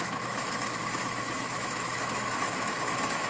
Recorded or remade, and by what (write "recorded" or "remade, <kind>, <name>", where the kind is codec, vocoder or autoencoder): remade, autoencoder, DAC-VAE